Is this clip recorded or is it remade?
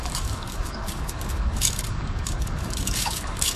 remade